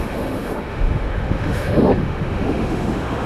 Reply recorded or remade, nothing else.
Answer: remade